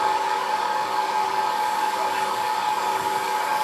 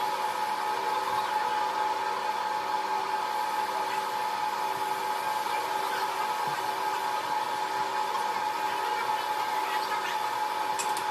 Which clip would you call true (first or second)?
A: second